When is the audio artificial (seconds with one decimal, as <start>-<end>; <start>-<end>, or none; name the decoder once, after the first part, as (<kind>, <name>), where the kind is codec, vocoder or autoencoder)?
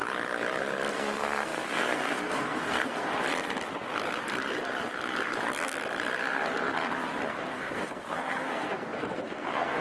0.9-3.1 (codec, SNAC); 7.3-9.8